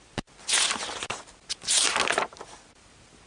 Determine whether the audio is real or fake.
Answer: real